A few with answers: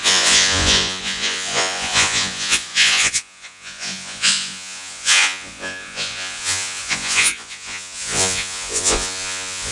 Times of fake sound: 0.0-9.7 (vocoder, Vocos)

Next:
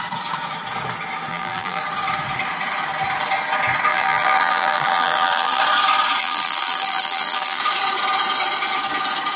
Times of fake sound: 1.3-1.8 (vocoder, BigVGAN v2); 3.9-5.6; 6.2-7.6